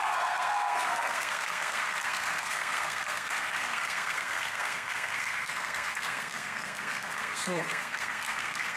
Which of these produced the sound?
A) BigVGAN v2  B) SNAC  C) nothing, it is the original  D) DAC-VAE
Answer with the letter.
B